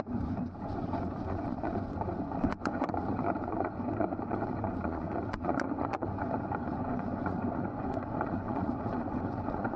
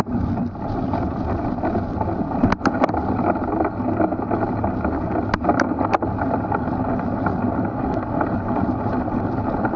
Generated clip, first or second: first